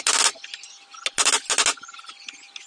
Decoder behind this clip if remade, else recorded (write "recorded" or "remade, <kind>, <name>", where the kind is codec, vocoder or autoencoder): recorded